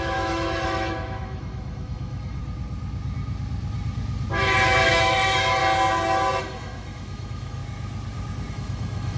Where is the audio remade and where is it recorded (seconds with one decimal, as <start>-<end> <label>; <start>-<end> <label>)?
0.0-2.4 remade; 2.4-4.3 recorded; 4.3-5.6 remade; 5.6-6.4 recorded; 6.4-7.6 remade; 7.6-8.5 recorded; 8.5-9.2 remade